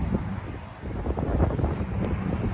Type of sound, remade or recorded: recorded